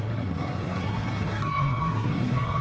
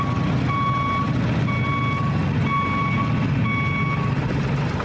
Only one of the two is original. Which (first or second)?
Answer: second